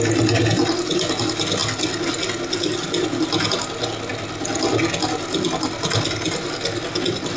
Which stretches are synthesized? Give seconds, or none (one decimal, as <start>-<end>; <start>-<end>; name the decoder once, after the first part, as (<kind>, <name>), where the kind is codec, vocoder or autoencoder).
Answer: none